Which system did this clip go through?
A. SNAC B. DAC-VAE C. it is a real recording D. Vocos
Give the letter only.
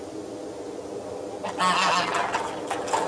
C